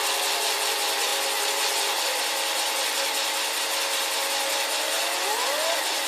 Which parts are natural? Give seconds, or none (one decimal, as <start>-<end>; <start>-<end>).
0.0-6.1